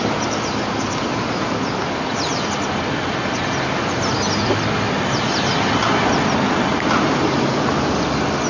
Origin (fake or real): real